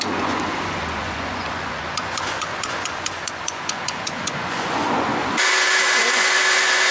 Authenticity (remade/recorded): remade